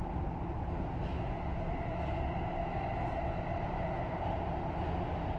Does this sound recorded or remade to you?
recorded